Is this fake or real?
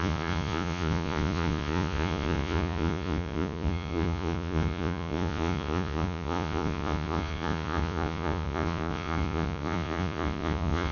fake